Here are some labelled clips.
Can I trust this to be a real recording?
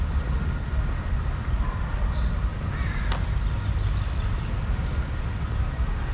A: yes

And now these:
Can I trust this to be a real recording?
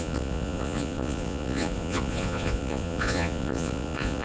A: no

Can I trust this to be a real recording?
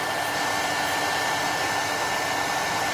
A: yes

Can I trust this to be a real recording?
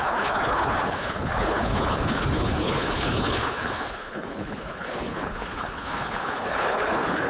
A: no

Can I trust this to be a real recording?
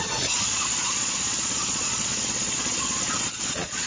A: no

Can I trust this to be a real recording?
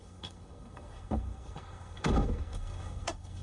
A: no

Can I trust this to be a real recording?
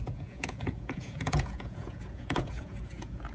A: no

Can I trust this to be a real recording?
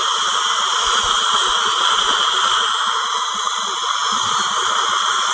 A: yes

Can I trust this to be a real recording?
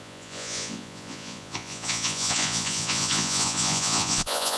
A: no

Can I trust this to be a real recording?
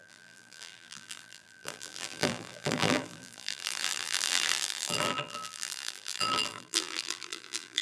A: no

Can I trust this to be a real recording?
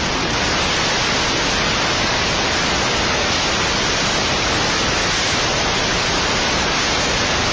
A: yes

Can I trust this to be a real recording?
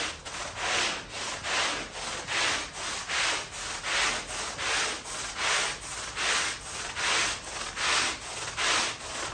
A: yes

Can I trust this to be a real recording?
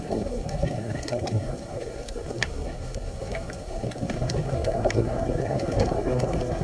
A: no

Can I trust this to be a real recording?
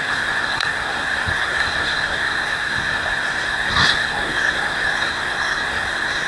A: no